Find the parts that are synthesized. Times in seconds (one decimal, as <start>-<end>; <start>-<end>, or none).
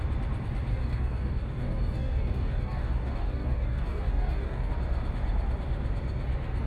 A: 0.7-4.7